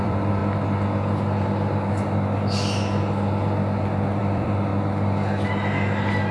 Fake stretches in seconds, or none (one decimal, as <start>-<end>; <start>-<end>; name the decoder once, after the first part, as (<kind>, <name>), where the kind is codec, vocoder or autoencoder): 0.0-0.4 (vocoder, BigVGAN v2); 4.2-4.7